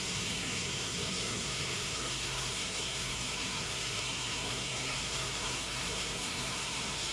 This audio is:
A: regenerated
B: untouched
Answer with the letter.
A